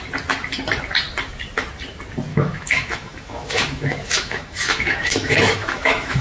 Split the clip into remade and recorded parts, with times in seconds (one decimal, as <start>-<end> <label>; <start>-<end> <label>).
0.0-2.3 recorded; 2.3-6.2 remade